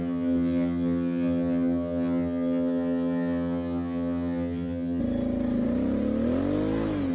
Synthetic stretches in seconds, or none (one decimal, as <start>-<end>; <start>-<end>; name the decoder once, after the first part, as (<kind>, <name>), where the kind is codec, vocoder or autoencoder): 0.0-5.0 (vocoder, HiFi-GAN)